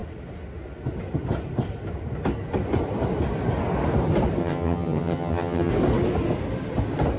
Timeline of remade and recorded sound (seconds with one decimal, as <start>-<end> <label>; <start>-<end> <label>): 0.0-4.4 recorded; 4.4-5.7 remade; 5.7-7.2 recorded